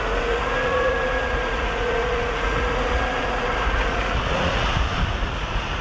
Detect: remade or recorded remade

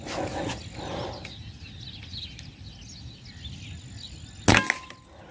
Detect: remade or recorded recorded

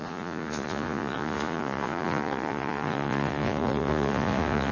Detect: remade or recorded remade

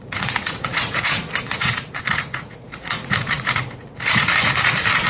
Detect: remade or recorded remade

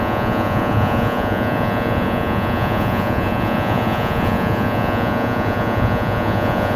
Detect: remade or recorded remade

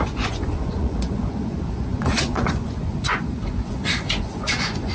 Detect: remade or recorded remade